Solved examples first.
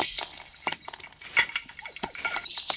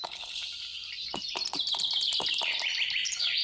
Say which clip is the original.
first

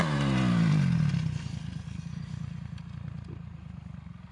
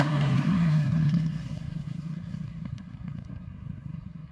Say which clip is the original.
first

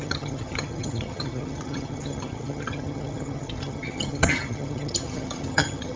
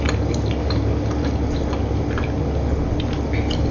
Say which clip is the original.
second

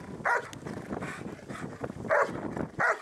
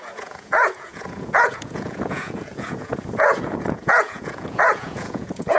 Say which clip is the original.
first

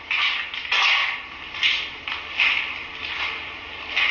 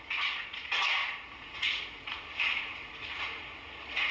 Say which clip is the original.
first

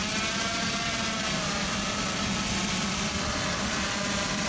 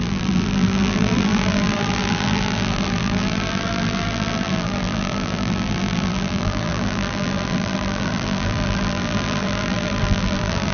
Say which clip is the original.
first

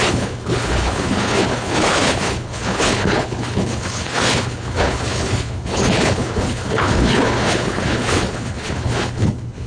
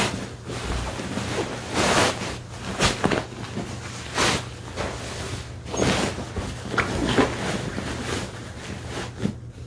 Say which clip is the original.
second